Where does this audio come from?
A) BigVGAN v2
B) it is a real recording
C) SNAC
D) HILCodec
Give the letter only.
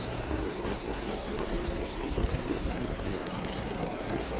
C